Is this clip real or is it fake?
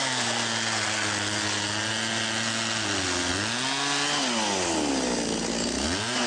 real